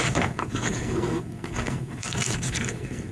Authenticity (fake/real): fake